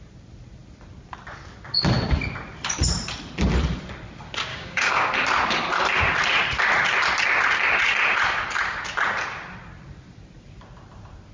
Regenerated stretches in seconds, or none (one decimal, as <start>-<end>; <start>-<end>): 4.5-5.1